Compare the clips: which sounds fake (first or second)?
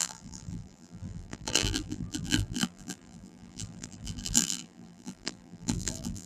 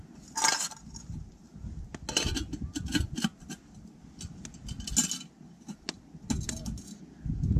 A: first